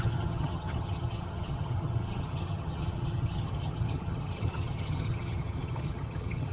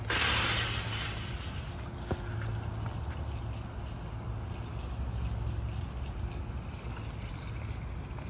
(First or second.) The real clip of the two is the second